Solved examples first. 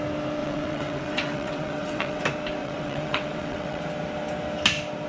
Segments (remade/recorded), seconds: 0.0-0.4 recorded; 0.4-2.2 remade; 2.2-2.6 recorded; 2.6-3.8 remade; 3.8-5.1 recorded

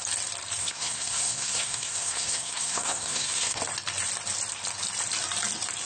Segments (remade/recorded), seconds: 0.0-0.6 recorded; 0.6-3.6 remade; 3.6-5.9 recorded